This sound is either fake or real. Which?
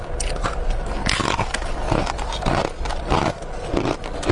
real